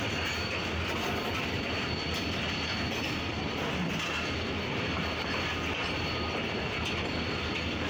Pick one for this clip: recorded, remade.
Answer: recorded